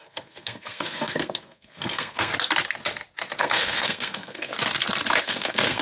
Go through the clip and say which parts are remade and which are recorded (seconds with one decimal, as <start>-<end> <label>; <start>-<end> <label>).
0.0-2.3 remade; 2.3-3.4 recorded; 3.4-4.5 remade; 4.5-5.2 recorded; 5.2-5.8 remade